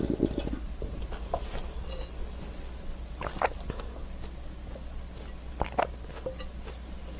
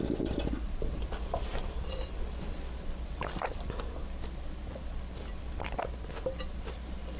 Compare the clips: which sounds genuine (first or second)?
first